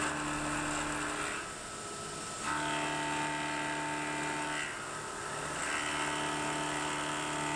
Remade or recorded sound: recorded